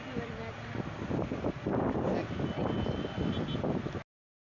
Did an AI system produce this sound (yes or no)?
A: no